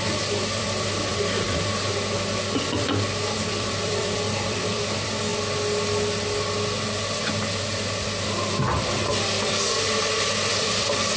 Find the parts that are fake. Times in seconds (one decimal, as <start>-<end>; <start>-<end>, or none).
0.0-1.1; 3.5-5.3; 10.5-11.2